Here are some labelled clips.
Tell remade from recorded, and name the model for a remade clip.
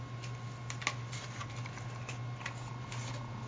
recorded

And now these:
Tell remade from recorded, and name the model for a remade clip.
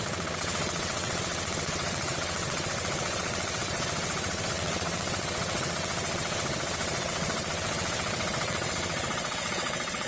remade, vocoder, WaveNeXt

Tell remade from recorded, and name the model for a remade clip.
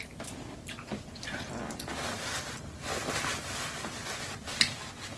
recorded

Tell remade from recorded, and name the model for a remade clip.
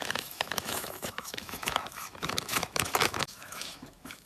remade, autoencoder, DAC-VAE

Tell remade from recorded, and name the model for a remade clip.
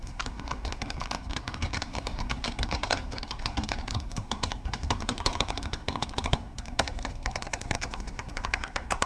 remade, codec, SNAC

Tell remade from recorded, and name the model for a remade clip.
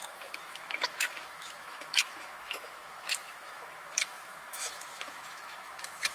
remade, autoencoder, DAC-VAE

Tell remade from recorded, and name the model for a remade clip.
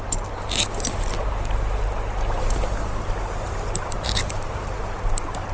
recorded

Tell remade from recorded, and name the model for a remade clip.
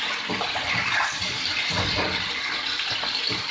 recorded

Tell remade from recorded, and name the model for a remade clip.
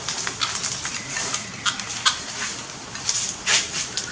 recorded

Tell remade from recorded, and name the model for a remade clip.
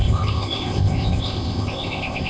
remade, codec, ZipCodec